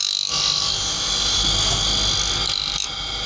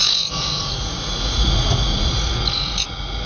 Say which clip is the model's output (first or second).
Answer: second